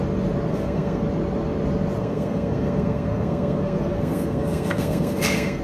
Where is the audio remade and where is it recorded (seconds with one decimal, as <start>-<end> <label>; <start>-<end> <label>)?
0.0-0.5 recorded; 0.5-1.0 remade; 1.0-2.0 recorded; 2.0-5.6 remade